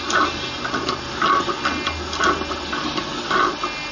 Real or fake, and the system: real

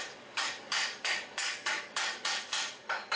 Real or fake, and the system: fake, codec, DAC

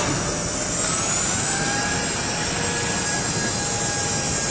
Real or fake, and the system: real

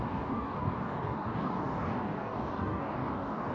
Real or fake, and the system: fake, codec, DAC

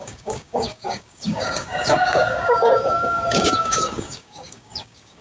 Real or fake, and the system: fake, codec, DAC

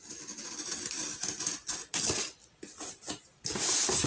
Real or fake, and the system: real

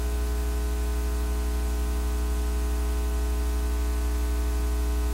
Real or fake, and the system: real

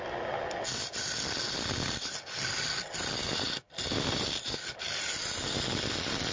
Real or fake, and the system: real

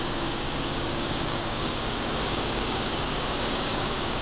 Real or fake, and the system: fake, codec, DAC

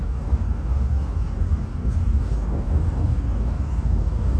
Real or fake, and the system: fake, codec, DAC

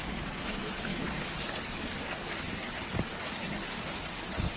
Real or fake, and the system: fake, codec, DAC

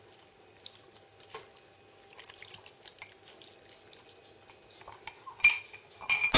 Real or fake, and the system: real